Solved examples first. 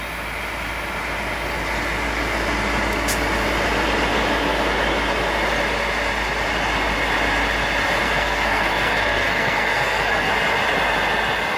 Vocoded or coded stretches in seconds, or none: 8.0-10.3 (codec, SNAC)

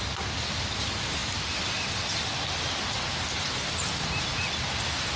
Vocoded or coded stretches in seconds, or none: none

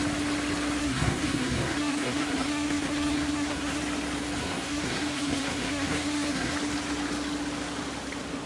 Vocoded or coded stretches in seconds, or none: 0.8-3.8 (codec, SNAC); 4.4-6.6

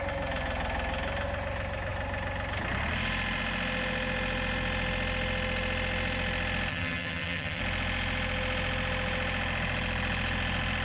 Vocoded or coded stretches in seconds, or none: 6.7-7.6 (vocoder, HiFi-GAN)

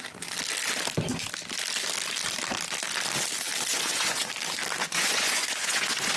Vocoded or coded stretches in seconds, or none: 3.7-4.3 (vocoder, Vocos); 4.8-6.2

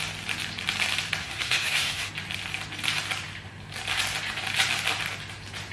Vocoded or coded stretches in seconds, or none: 1.2-2.1 (codec, SNAC)

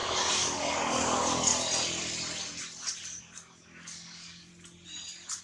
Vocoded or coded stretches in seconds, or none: 0.0-1.5 (codec, DAC); 3.2-4.5

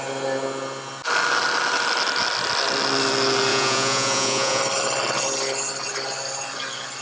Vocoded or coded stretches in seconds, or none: 3.5-4.6 (vocoder, Vocos)